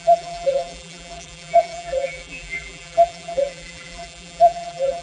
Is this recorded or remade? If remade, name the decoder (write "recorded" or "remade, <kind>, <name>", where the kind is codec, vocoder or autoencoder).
remade, vocoder, BigVGAN v2